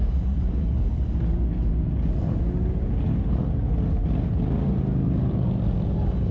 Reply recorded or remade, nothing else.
recorded